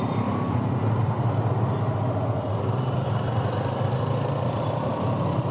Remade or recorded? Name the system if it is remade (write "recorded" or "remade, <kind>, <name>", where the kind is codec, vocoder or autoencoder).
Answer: recorded